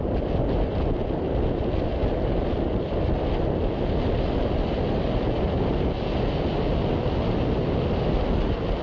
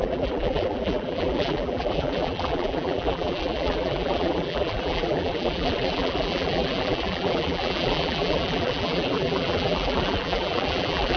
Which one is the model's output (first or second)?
second